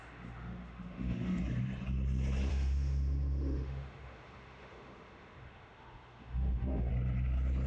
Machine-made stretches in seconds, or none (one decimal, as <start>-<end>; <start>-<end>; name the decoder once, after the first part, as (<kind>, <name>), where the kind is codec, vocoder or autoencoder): 0.0-1.4 (autoencoder, DAC-VAE); 2.5-6.9